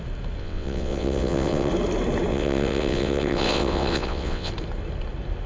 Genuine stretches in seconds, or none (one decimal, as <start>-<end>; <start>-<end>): 0.0-0.4; 1.7-2.3; 4.5-5.5